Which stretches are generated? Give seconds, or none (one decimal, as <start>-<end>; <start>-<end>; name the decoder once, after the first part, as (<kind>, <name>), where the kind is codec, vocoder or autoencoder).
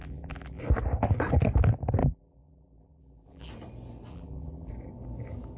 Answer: 0.0-0.6 (vocoder, BigVGAN v2); 2.0-3.5; 4.1-4.7